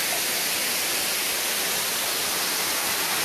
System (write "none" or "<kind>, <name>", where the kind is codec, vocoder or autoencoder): none